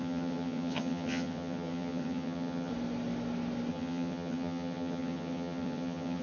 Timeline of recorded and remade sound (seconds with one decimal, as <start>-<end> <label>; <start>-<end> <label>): 0.0-2.7 remade; 2.7-3.7 recorded; 3.7-6.2 remade